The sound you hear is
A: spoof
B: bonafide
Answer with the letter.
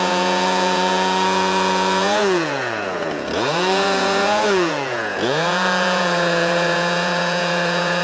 A